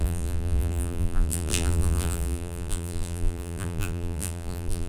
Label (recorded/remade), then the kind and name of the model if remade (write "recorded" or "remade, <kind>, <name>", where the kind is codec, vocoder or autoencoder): remade, vocoder, BigVGAN v2